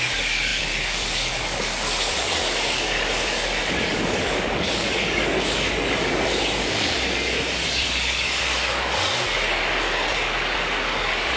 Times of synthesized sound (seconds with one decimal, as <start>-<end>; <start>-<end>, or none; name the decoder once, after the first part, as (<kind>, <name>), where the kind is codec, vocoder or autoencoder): 0.0-11.4 (codec, DAC)

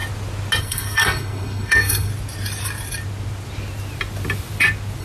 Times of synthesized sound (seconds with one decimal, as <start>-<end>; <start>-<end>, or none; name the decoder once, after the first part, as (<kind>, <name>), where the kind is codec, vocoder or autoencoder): 0.6-2.1 (codec, SNAC)